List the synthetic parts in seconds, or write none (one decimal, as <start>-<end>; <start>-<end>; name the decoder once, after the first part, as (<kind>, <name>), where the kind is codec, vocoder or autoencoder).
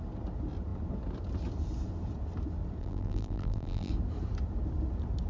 2.8-3.9 (vocoder, BigVGAN v2)